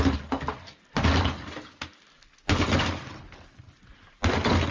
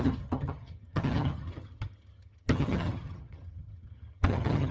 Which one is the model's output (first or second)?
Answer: second